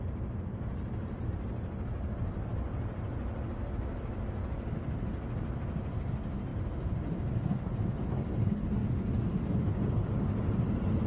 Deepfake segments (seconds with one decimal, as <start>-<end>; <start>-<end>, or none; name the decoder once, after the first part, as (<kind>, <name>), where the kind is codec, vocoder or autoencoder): none